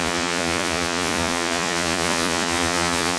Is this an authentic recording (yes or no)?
no